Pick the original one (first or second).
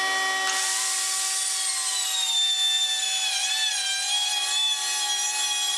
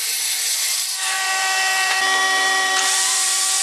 first